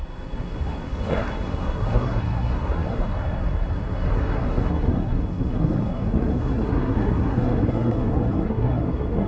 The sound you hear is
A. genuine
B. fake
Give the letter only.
B